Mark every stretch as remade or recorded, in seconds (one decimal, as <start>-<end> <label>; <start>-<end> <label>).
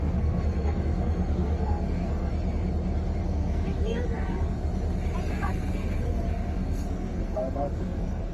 0.0-2.3 remade; 2.3-3.2 recorded; 3.2-4.6 remade; 4.6-5.3 recorded; 5.3-8.3 remade